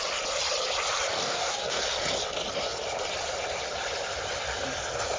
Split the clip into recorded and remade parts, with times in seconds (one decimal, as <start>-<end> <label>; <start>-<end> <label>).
0.0-1.1 recorded; 1.1-1.8 remade; 1.8-5.2 recorded